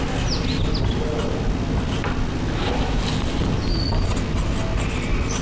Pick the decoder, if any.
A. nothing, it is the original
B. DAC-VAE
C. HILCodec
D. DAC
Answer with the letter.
A